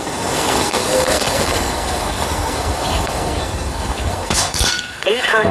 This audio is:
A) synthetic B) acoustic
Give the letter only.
A